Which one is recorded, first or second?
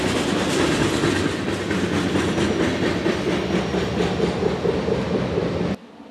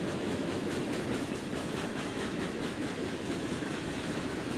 first